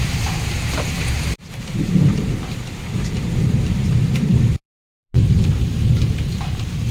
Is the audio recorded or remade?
remade